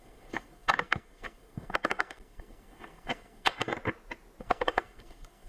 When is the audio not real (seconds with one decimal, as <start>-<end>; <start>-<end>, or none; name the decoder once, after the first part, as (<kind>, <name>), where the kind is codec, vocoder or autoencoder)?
0.0-3.7 (codec, SNAC); 4.4-5.5